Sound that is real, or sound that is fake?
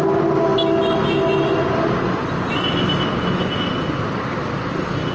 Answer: real